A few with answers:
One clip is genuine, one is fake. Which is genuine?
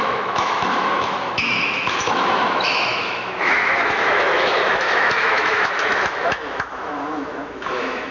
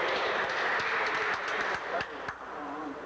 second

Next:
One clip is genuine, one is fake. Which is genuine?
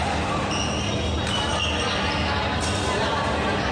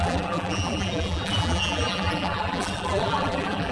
first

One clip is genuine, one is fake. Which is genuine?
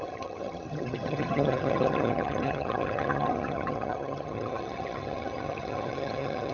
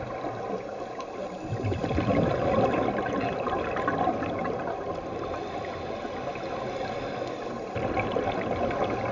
second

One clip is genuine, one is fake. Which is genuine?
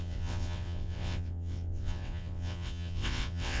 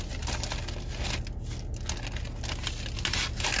second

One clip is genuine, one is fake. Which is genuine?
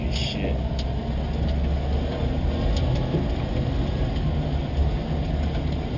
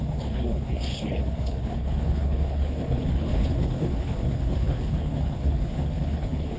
first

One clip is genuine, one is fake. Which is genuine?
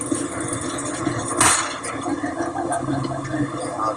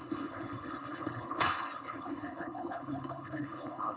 first